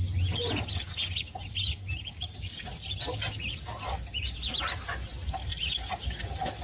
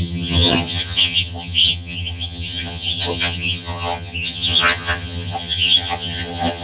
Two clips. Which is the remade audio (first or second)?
second